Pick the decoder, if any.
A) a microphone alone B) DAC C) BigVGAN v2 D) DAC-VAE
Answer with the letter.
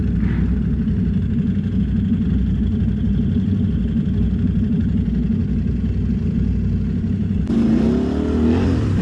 A